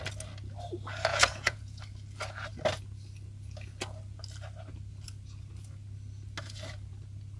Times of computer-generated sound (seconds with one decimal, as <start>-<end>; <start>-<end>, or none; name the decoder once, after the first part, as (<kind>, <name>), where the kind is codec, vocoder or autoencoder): 1.1-1.8 (vocoder, Vocos)